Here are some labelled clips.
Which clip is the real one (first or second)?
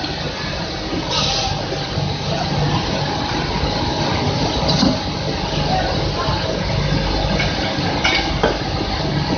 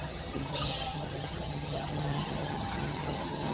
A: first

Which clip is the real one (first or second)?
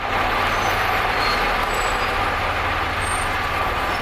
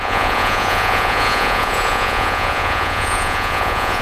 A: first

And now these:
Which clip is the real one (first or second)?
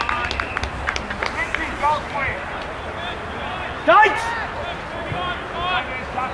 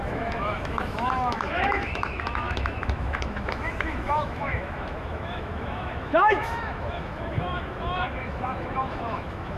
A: first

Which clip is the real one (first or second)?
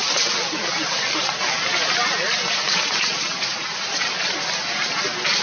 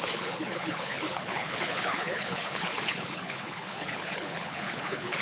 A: first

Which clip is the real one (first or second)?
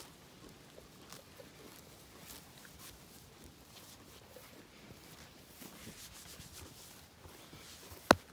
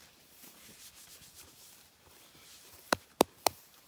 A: first